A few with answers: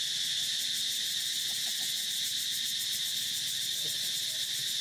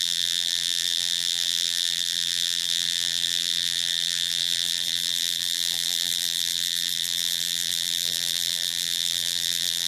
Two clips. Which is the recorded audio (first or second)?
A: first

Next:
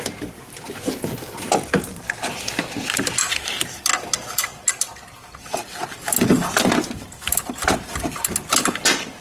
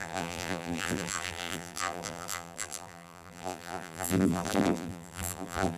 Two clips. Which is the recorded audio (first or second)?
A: first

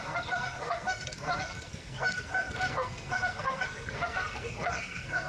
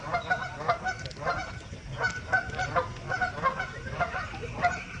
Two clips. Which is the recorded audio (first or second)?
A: second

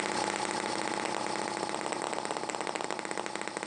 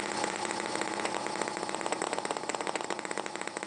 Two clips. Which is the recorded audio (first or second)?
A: first